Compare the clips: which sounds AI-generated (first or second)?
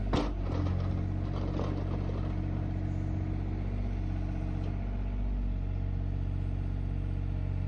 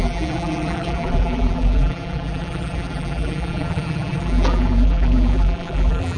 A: second